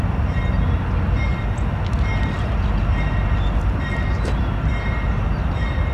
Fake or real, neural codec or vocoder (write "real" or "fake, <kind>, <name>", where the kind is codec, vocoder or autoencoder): real